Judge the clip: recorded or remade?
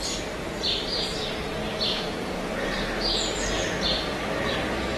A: recorded